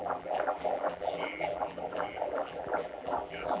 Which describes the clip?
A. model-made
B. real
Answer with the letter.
A